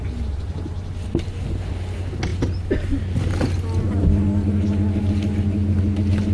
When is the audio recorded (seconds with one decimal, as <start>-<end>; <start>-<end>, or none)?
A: 0.0-6.3